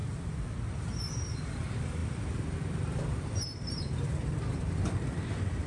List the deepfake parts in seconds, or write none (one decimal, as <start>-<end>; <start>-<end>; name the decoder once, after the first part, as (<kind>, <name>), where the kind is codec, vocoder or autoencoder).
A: 0.0-0.7 (vocoder, BigVGAN v2); 2.0-4.9